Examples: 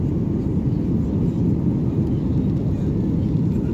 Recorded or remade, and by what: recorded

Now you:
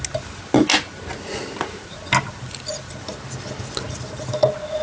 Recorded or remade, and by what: recorded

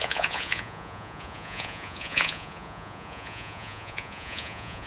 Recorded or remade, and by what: remade, vocoder, Vocos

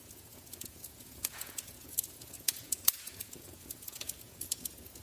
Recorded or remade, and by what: remade, vocoder, Vocos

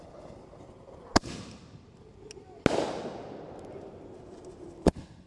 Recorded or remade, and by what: recorded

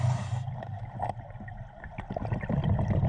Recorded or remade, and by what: recorded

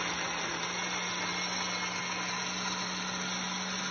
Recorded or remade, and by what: recorded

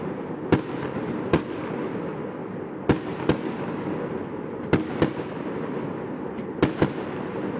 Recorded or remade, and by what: recorded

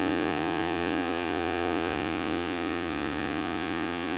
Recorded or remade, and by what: remade, vocoder, Vocos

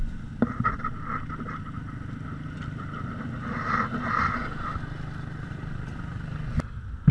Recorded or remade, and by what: recorded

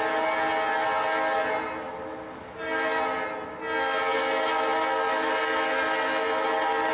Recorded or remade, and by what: recorded